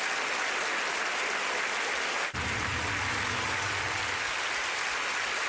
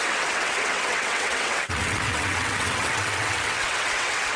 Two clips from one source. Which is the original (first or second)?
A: first